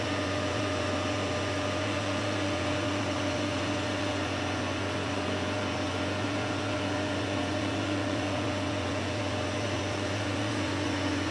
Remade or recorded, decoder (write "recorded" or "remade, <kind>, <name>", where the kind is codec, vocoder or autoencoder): remade, vocoder, Vocos